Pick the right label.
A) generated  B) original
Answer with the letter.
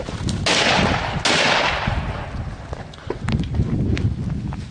B